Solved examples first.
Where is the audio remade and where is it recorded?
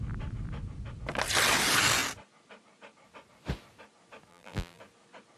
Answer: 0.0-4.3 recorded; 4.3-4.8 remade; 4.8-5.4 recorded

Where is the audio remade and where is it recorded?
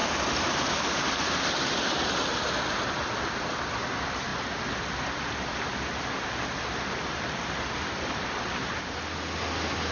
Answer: 0.0-9.9 recorded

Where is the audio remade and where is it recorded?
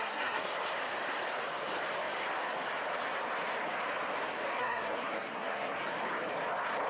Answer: 0.0-0.5 remade; 0.5-4.6 recorded; 4.6-5.8 remade; 5.8-6.9 recorded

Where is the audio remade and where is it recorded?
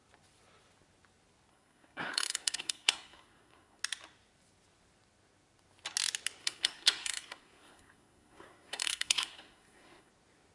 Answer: 0.0-1.5 recorded; 1.5-3.8 remade; 3.8-6.4 recorded; 6.4-10.1 remade; 10.1-10.5 recorded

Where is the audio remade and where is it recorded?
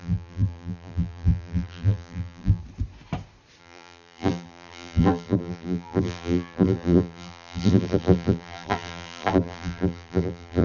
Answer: 0.0-2.6 remade; 2.6-3.6 recorded; 3.6-10.6 remade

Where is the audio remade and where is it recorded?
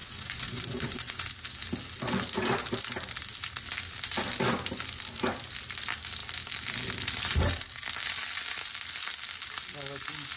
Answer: 0.0-1.2 remade; 1.2-10.4 recorded